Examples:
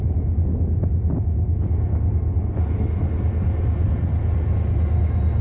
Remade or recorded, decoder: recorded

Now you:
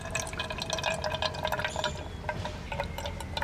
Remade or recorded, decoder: recorded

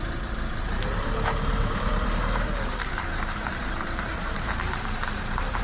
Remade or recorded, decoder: remade, vocoder, BigVGAN v2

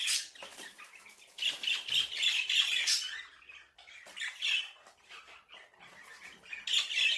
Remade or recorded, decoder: remade, vocoder, BigVGAN v2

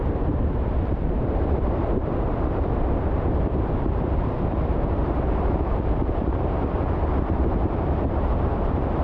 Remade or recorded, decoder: remade, vocoder, BigVGAN v2